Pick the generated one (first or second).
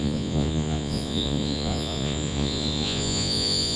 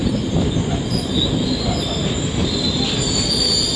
first